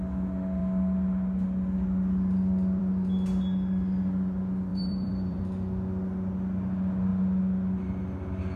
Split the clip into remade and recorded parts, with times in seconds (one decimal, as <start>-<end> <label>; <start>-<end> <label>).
0.0-4.7 recorded; 4.7-5.4 remade; 5.4-8.6 recorded